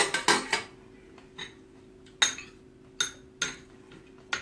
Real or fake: real